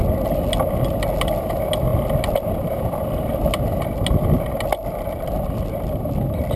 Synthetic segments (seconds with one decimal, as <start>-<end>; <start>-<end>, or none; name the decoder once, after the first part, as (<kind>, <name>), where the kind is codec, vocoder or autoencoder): none